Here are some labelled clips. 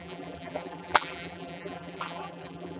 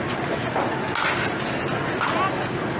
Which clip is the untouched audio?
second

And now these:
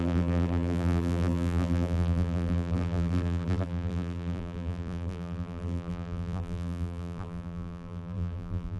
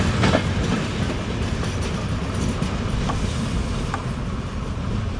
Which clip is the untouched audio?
second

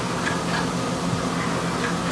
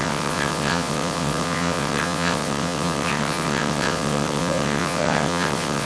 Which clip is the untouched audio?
first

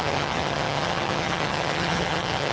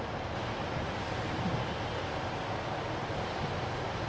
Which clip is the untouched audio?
second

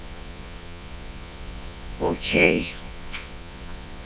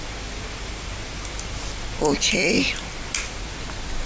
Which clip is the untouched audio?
second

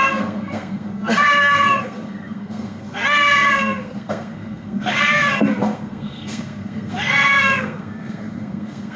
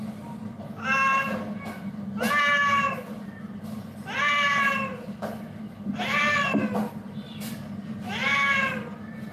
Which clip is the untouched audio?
second